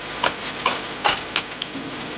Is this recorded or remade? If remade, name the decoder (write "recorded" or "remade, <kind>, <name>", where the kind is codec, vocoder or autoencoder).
recorded